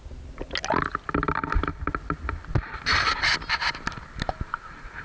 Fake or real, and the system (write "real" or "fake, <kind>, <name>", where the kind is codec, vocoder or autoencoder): real